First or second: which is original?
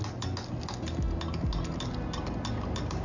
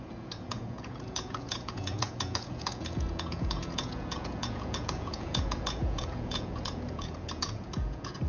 first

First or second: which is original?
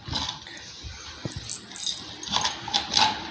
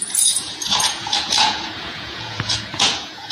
first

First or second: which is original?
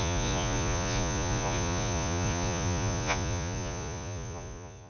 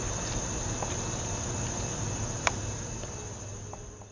second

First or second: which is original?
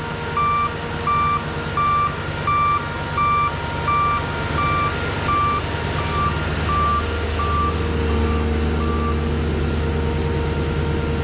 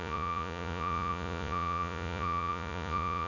first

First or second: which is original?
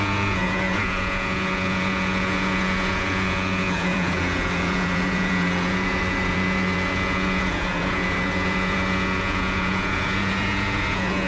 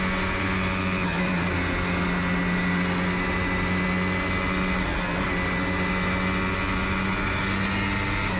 second